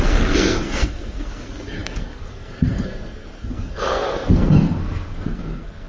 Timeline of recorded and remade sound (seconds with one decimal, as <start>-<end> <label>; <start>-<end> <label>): 0.0-5.9 remade